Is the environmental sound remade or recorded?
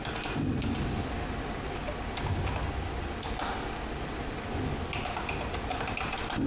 recorded